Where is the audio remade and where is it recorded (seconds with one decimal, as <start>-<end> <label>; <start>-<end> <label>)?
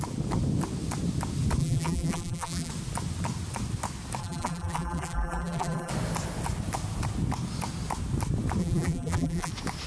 0.0-1.6 recorded; 1.6-2.7 remade; 2.7-4.2 recorded; 4.2-5.9 remade; 5.9-8.6 recorded; 8.6-9.5 remade; 9.5-9.9 recorded